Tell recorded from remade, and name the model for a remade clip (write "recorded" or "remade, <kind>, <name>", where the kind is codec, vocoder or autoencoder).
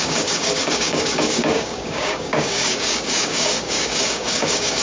remade, codec, DAC